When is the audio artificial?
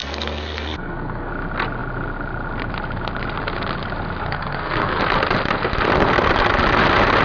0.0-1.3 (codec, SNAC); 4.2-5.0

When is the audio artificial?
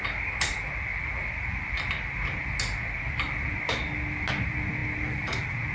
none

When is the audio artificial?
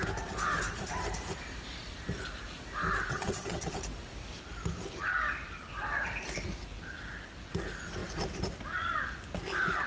3.1-3.7 (vocoder, HiFi-GAN)